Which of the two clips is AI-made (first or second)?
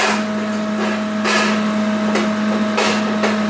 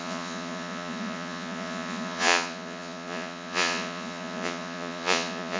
second